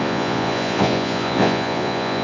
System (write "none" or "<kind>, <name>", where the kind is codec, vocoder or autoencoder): vocoder, Vocos